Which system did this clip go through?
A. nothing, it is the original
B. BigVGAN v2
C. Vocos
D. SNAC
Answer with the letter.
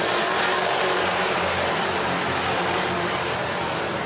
B